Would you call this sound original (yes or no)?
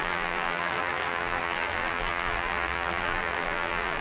no